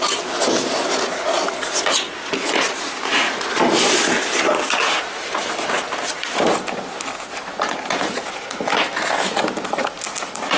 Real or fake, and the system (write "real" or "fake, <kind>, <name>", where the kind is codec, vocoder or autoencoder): real